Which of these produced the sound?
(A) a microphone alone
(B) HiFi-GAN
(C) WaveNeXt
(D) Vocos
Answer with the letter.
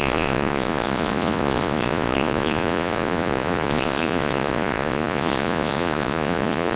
D